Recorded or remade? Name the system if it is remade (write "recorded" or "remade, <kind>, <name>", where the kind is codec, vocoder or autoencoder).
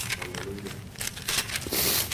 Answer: recorded